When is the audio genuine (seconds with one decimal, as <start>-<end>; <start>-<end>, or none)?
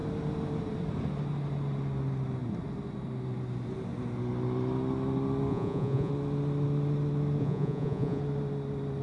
0.0-5.5; 6.1-7.4; 8.2-9.0